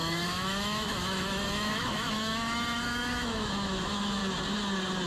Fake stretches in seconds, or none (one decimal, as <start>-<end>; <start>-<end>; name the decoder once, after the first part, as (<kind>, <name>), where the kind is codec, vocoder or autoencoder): 0.0-4.2 (autoencoder, DAC-VAE)